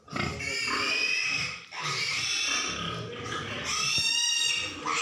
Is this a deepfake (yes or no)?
no